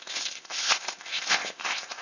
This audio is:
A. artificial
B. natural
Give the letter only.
A